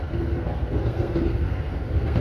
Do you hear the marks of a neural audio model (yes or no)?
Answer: yes